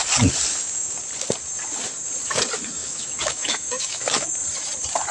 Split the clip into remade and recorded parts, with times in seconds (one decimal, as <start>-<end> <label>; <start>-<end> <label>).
0.0-2.8 recorded; 2.8-4.3 remade; 4.3-5.1 recorded